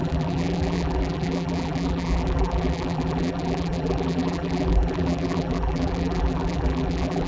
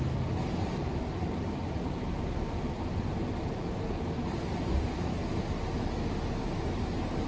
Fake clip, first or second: first